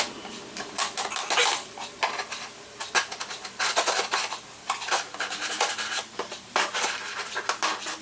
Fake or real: real